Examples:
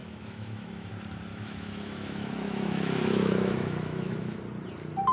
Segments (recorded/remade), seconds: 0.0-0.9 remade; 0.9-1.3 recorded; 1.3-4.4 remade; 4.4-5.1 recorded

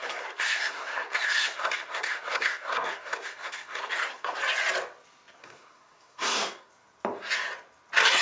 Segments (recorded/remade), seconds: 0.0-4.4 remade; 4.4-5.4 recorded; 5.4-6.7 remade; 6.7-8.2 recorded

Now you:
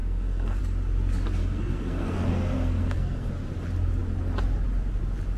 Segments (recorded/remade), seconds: 0.0-0.6 remade; 0.6-1.4 recorded; 1.4-3.3 remade; 3.3-5.4 recorded